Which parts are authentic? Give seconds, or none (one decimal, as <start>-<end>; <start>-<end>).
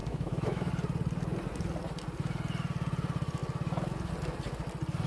0.7-5.1